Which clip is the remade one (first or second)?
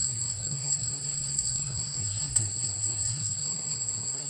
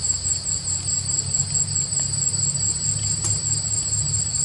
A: first